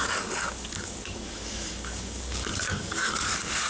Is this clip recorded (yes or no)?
no